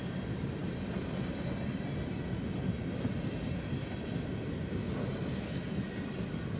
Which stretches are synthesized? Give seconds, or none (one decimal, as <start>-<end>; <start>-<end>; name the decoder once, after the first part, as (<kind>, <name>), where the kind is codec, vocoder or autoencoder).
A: none